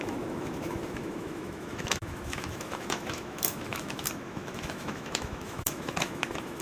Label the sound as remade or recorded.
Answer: remade